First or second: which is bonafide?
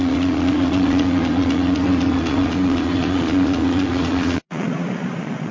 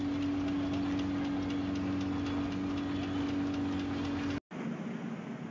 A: second